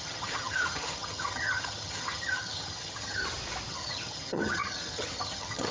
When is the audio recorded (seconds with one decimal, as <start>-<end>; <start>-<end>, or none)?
3.2-3.7